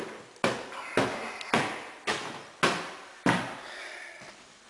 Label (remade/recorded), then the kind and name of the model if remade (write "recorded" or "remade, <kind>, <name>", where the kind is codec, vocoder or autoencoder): recorded